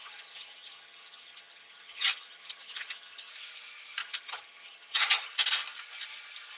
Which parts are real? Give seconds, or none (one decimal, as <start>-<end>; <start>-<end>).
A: 3.3-4.0; 5.3-6.6